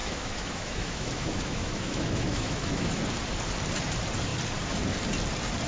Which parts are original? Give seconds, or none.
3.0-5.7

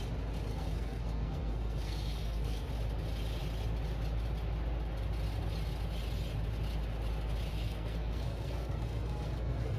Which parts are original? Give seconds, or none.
0.0-0.5; 2.7-7.5

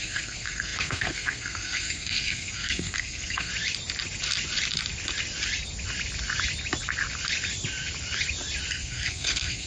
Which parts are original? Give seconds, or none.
3.5-8.7